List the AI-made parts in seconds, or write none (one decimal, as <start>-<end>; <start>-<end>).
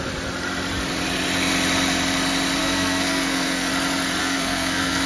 2.6-3.7; 4.2-5.1